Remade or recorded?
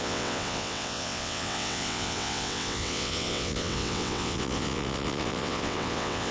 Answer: remade